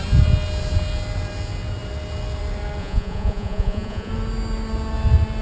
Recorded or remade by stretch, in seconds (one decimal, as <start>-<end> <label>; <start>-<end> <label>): 0.0-2.8 recorded; 2.8-4.1 remade; 4.1-5.4 recorded